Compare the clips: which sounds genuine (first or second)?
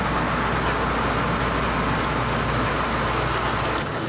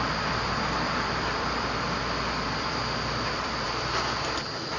first